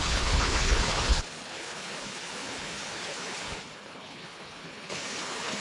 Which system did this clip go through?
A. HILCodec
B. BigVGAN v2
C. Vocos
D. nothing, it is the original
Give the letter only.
A